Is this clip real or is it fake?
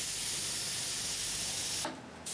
real